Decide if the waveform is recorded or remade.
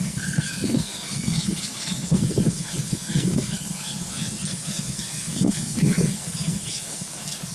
remade